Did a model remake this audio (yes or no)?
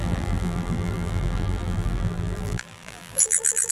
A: yes